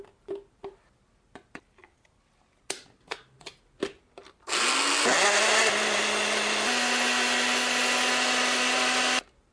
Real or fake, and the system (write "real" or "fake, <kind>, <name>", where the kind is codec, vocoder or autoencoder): real